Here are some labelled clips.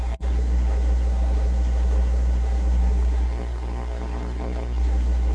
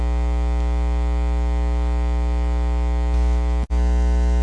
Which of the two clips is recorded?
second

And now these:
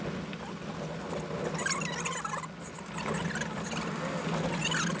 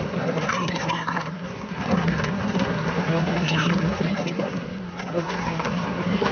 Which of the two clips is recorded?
first